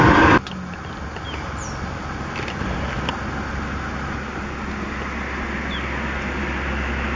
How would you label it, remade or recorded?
recorded